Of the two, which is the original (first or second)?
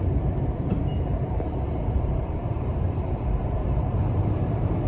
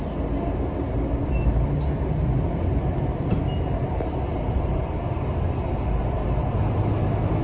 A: second